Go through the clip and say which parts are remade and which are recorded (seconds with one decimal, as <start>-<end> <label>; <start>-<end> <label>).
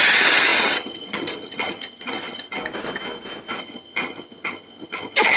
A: 0.0-2.6 remade; 2.6-3.6 recorded; 3.6-5.4 remade